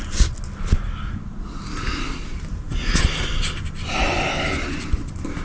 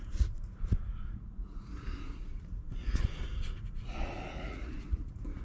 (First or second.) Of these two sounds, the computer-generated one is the second